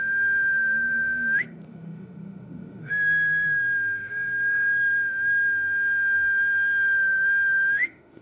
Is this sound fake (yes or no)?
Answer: yes